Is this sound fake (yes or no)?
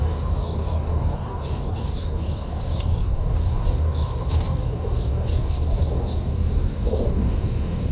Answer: yes